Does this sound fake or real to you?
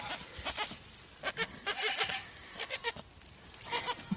real